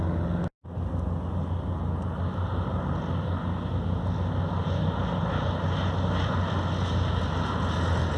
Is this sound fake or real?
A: real